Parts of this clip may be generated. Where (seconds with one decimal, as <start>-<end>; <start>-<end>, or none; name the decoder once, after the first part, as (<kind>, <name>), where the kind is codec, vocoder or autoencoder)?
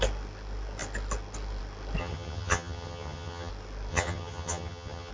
2.0-3.5 (vocoder, HiFi-GAN); 3.9-5.1